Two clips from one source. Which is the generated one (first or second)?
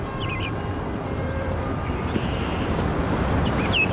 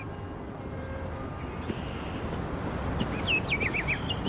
first